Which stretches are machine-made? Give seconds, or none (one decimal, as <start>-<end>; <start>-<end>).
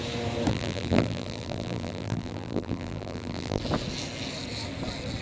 0.5-3.6